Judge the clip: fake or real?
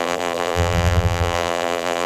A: fake